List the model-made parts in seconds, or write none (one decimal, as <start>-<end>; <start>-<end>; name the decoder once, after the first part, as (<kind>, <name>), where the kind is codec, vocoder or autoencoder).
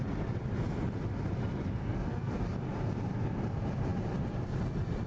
1.8-2.4 (codec, SNAC)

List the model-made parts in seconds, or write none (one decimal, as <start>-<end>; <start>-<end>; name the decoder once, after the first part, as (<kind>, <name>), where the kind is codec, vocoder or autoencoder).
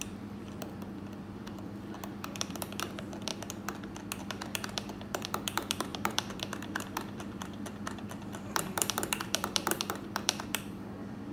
0.0-3.3 (vocoder, BigVGAN v2); 4.2-11.3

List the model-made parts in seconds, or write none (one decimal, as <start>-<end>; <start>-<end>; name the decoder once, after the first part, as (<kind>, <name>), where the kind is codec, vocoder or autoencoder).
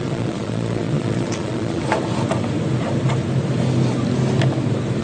0.0-1.8 (vocoder, Vocos)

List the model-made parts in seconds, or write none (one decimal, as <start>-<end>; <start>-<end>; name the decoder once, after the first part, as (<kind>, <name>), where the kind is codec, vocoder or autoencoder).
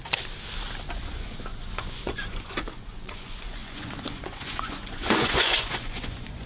0.9-6.5 (vocoder, Vocos)